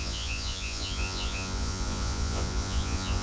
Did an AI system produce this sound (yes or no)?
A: yes